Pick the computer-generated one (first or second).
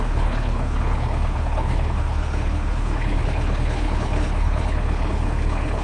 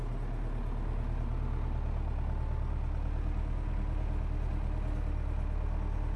first